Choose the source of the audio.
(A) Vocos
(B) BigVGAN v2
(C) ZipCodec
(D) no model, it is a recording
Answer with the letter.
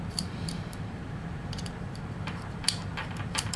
B